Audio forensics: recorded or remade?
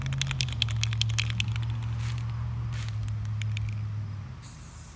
recorded